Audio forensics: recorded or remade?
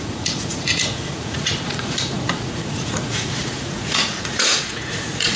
remade